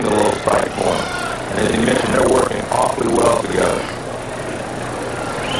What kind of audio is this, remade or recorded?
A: recorded